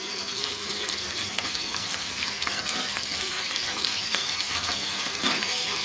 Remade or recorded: remade